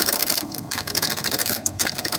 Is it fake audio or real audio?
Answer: fake